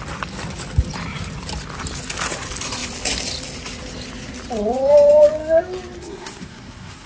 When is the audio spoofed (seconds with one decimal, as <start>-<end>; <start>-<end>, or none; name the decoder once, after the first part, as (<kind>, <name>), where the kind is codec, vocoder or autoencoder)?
6.0-7.1 (codec, SNAC)

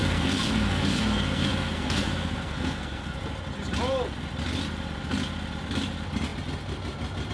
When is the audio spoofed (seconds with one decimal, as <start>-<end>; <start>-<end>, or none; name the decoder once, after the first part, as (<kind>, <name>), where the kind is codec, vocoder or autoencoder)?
0.0-3.2 (codec, SNAC)

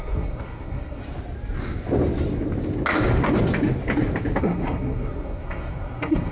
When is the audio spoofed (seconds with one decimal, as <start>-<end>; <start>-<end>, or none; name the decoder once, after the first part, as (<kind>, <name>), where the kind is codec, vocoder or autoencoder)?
0.0-1.0 (codec, SNAC); 4.4-6.3

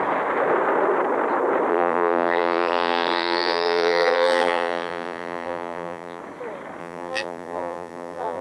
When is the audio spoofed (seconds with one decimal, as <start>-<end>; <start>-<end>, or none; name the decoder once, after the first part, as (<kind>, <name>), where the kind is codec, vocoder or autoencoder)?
1.7-6.2 (vocoder, BigVGAN v2); 6.8-8.4